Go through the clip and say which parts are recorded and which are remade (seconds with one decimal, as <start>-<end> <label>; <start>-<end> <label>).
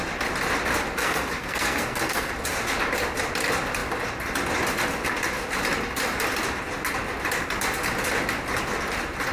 0.0-1.0 recorded; 1.0-2.3 remade; 2.3-9.3 recorded